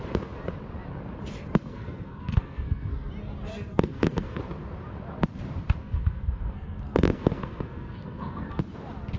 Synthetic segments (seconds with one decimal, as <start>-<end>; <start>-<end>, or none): 1.7-3.1; 3.5-4.4; 5.8-8.6